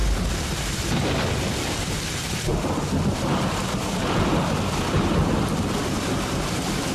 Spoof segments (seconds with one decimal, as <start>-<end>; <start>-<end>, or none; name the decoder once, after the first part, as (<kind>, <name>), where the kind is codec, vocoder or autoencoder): 1.8-6.9 (vocoder, BigVGAN v2)